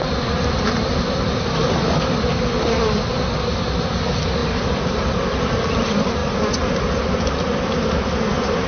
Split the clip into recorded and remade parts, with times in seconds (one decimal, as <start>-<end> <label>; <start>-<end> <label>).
0.0-8.7 recorded